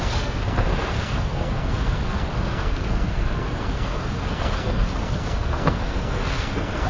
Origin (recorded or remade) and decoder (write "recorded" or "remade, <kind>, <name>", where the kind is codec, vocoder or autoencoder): remade, codec, SNAC